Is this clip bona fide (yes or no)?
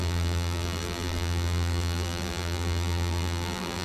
no